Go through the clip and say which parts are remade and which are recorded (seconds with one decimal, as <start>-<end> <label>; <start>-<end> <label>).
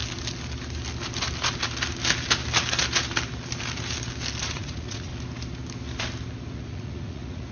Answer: 0.0-4.4 recorded; 4.4-5.1 remade; 5.1-6.5 recorded; 6.5-7.5 remade